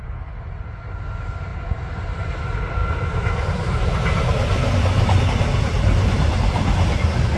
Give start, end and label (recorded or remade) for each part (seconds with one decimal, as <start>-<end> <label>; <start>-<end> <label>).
0.0-7.4 recorded